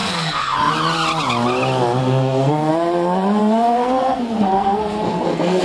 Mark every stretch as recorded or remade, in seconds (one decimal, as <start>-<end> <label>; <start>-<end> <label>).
0.0-0.7 remade; 0.7-2.0 recorded; 2.0-2.7 remade; 2.7-3.4 recorded; 3.4-5.6 remade